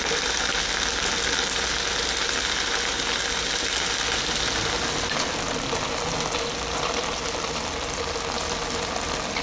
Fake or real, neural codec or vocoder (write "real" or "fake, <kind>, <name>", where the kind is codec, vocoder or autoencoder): real